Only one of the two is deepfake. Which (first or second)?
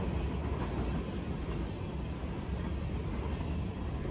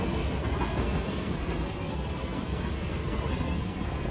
second